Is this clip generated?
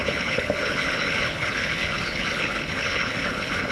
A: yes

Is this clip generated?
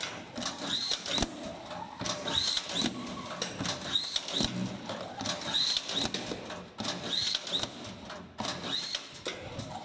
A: no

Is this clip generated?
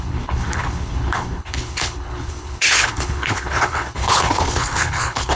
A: yes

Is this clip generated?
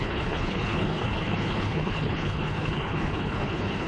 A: yes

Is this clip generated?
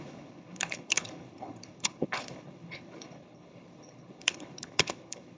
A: yes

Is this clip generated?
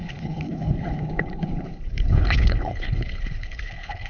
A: yes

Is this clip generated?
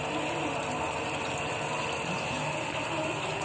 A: no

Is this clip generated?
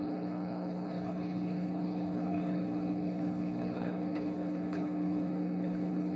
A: yes